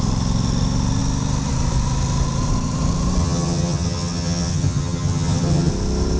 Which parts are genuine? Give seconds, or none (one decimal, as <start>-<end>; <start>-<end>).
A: 0.0-3.2; 5.7-6.2